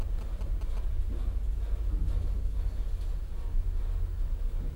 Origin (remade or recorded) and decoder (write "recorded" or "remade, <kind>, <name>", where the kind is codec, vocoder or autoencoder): recorded